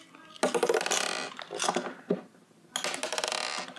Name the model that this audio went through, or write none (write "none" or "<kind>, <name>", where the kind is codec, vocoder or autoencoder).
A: none